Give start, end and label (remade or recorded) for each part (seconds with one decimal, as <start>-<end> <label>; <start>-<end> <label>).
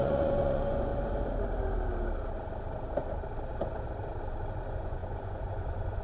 0.0-0.9 remade; 0.9-4.5 recorded; 4.5-6.0 remade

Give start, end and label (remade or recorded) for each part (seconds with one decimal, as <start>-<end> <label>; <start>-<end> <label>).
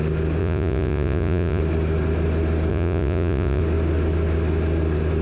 0.0-0.4 recorded; 0.4-1.6 remade; 1.6-2.7 recorded; 2.7-3.6 remade; 3.6-5.2 recorded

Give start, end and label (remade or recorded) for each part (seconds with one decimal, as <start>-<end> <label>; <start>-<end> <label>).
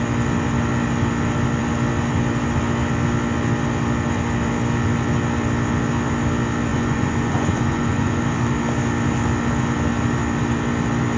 0.0-6.7 recorded; 6.7-8.2 remade; 8.2-11.2 recorded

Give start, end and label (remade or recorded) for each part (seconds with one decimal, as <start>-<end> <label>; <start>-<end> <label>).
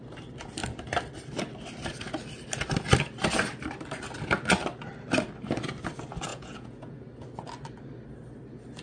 0.0-6.3 recorded; 6.3-7.0 remade; 7.0-8.8 recorded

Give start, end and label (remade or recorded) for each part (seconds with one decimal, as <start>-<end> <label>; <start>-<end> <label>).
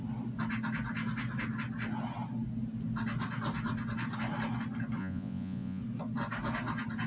0.0-5.0 recorded; 5.0-5.8 remade; 5.8-7.1 recorded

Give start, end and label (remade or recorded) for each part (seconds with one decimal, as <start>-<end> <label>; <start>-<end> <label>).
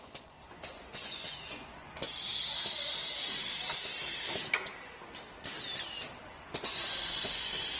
0.0-2.3 remade; 2.3-6.3 recorded; 6.3-7.8 remade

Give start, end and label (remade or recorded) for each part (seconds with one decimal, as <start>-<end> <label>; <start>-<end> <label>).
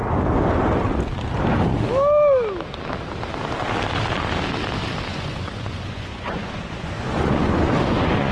0.0-5.1 recorded; 5.1-8.3 remade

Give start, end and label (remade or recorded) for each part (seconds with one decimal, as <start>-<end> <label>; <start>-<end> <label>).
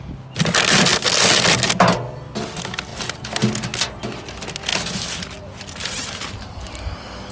0.0-7.3 recorded